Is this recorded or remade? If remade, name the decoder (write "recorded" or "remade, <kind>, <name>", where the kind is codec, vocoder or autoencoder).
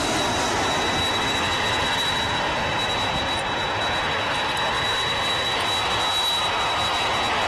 recorded